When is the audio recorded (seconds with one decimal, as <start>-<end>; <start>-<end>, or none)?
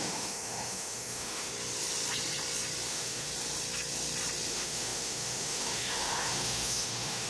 1.5-2.9; 3.3-4.5